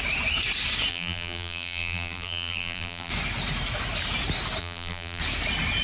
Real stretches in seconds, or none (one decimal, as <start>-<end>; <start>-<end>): 0.0-0.9; 3.1-4.6; 5.2-5.8